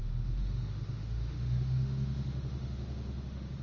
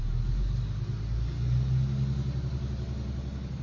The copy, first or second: first